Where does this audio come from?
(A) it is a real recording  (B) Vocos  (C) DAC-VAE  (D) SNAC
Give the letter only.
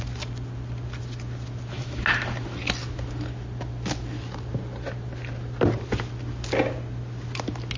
A